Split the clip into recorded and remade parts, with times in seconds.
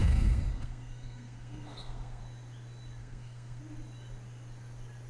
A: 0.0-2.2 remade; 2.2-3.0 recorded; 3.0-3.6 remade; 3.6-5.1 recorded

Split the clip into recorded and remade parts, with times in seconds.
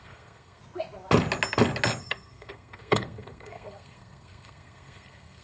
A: 0.0-0.6 remade; 0.6-2.0 recorded; 2.0-5.4 remade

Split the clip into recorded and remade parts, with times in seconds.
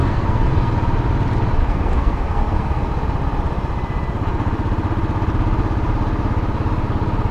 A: 0.0-0.7 remade; 0.7-1.6 recorded; 1.6-2.9 remade; 2.9-7.3 recorded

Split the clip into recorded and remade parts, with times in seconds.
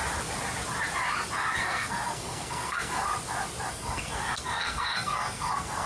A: 0.0-1.6 recorded; 1.6-3.1 remade; 3.1-3.7 recorded; 3.7-5.9 remade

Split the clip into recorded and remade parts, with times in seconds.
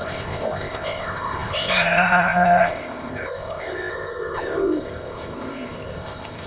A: 0.0-6.5 remade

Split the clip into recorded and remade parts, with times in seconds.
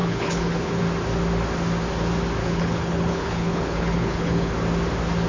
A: 0.0-0.8 remade; 0.8-2.4 recorded; 2.4-4.5 remade; 4.5-5.3 recorded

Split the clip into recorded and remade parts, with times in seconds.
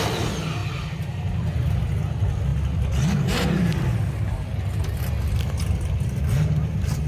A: 0.0-7.1 recorded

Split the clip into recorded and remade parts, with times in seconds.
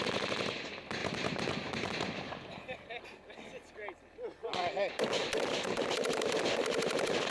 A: 0.0-1.0 recorded; 1.0-1.9 remade; 1.9-7.3 recorded